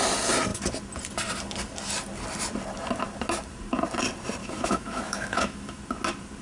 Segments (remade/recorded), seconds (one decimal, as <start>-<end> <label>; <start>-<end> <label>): 0.0-4.4 recorded; 4.4-5.8 remade; 5.8-6.4 recorded